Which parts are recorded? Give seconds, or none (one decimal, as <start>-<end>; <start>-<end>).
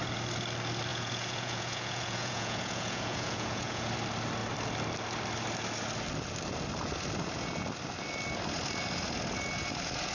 0.0-0.9; 3.9-10.1